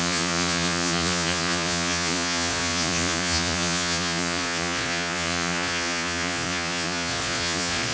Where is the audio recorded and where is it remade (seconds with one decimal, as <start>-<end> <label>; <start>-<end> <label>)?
0.0-7.9 remade